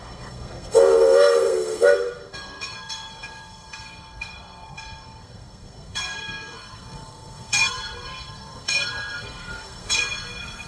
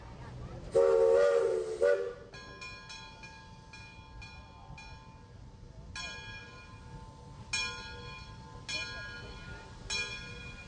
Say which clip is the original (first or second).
second